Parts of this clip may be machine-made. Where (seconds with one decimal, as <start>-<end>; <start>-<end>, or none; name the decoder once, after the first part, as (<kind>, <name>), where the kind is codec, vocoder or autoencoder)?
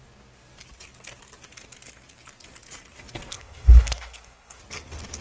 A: 3.3-4.6 (codec, SNAC)